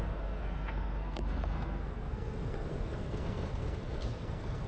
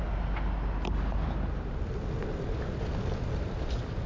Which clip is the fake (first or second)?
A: first